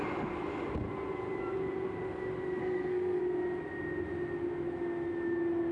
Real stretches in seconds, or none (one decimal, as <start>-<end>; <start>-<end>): 0.0-2.6; 3.2-5.7